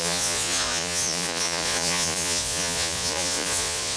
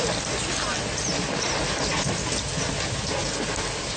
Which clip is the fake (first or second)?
first